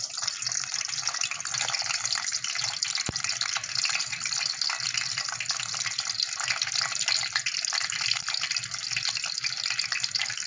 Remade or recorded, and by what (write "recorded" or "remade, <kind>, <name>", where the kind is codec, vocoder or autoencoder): recorded